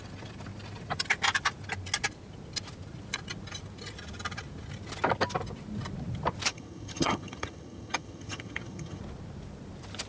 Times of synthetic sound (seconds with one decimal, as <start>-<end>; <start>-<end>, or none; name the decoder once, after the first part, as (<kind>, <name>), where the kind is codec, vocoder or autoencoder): 6.5-9.0 (vocoder, HiFi-GAN)